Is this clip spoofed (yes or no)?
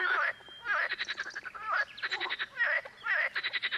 yes